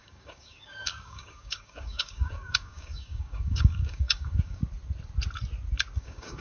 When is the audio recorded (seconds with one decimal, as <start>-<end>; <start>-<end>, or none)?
4.6-6.0